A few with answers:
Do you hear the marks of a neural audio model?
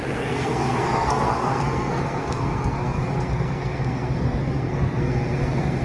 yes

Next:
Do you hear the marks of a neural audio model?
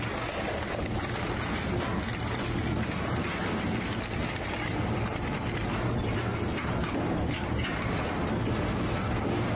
no